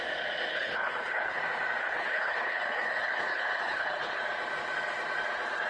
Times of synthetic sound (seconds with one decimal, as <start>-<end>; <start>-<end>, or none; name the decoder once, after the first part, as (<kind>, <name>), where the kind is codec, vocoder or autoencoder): 0.5-1.4 (codec, HILCodec); 1.8-4.2